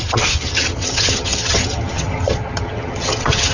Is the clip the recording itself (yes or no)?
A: no